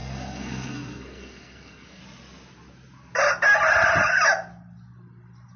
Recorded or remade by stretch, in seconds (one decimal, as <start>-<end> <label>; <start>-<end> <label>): 0.0-2.0 remade; 2.0-5.6 recorded